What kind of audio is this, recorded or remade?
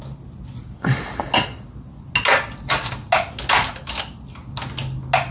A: recorded